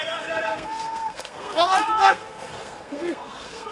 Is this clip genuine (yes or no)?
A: no